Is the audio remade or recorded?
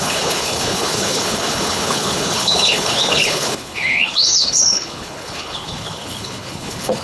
remade